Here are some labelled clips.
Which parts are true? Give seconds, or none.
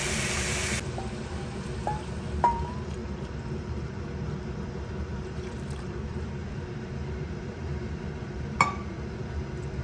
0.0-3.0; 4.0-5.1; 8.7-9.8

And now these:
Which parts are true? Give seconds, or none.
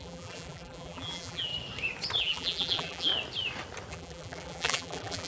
1.5-2.2; 3.1-3.9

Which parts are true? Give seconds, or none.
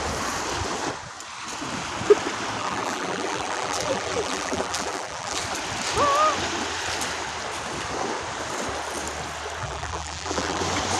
0.0-2.6; 5.4-9.6; 10.6-11.0